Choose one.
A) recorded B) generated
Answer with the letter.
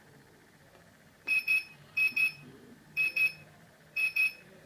B